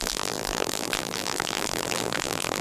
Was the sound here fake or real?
fake